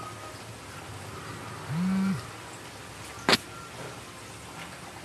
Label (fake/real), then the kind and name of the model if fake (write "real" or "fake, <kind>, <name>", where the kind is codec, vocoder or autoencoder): real